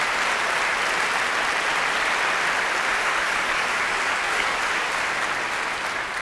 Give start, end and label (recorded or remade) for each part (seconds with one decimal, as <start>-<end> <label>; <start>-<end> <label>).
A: 0.0-2.9 recorded; 2.9-4.6 remade; 4.6-6.2 recorded